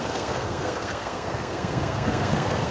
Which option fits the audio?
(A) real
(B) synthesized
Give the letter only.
B